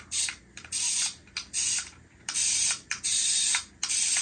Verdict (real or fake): real